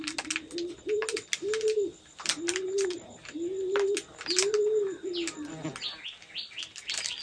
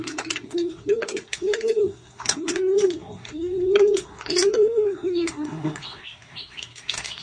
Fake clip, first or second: second